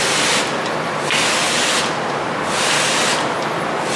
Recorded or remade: recorded